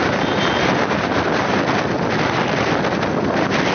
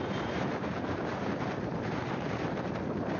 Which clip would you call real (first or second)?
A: first